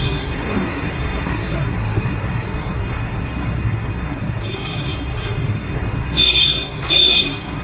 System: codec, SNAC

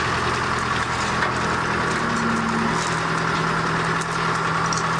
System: none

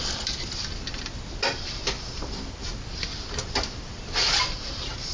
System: none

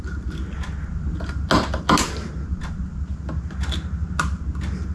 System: none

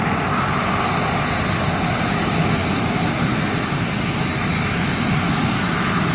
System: none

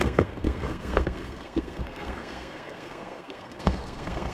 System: codec, SNAC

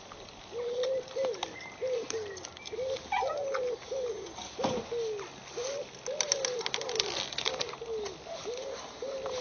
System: none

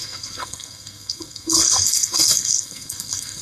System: codec, SNAC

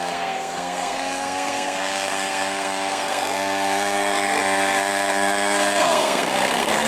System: codec, SNAC